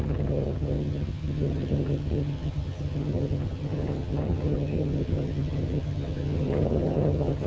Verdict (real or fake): fake